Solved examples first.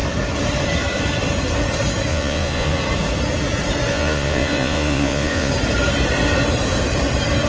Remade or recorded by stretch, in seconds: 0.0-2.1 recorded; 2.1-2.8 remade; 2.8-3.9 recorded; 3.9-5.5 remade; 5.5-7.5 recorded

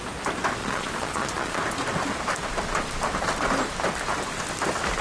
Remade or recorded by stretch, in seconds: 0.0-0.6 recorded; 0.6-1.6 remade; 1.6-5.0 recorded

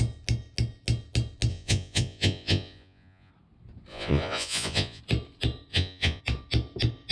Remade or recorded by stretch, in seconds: 0.0-1.5 recorded; 1.5-3.3 remade; 3.3-3.9 recorded; 3.9-5.0 remade; 5.0-5.7 recorded; 5.7-6.2 remade; 6.2-7.1 recorded